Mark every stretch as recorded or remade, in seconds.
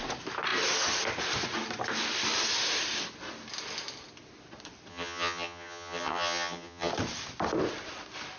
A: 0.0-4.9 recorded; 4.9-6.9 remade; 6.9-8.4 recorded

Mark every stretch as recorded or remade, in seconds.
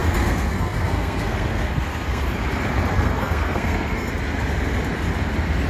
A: 0.0-2.2 remade; 2.2-2.9 recorded; 2.9-4.1 remade; 4.1-5.7 recorded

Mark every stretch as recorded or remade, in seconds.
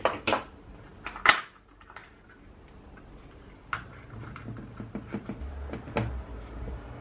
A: 0.0-7.0 recorded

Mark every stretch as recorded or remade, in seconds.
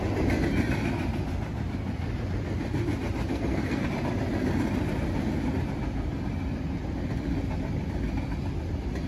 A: 0.0-3.3 recorded; 3.3-3.8 remade; 3.8-9.1 recorded